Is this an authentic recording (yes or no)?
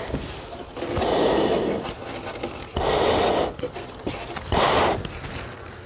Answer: yes